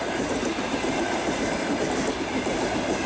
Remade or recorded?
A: remade